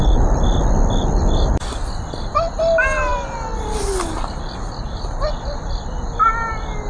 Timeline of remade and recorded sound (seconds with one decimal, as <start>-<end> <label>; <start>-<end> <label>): 0.0-6.9 recorded